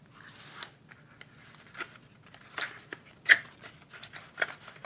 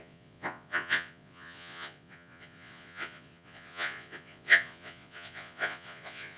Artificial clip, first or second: second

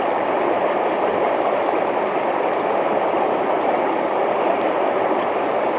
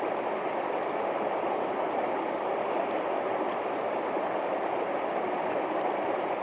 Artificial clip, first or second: first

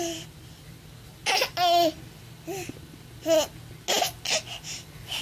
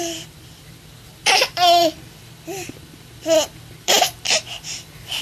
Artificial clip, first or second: second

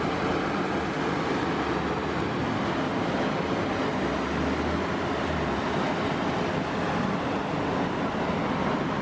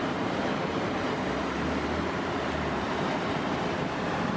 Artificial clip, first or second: second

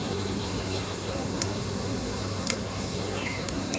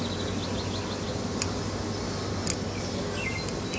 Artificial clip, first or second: first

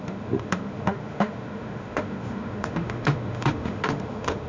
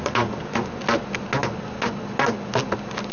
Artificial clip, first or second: first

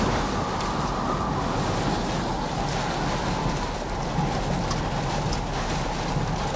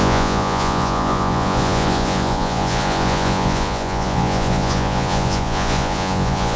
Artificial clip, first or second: second